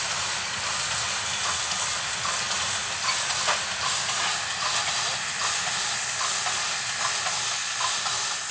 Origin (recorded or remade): recorded